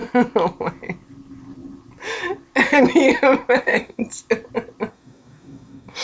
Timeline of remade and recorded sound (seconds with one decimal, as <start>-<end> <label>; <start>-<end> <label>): 0.0-3.6 recorded; 3.6-4.0 remade; 4.0-4.9 recorded; 4.9-6.0 remade